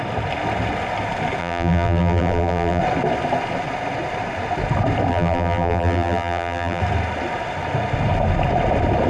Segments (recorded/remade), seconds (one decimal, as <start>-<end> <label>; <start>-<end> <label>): 0.0-1.4 recorded; 1.4-2.8 remade; 2.8-5.1 recorded; 5.1-6.8 remade; 6.8-9.1 recorded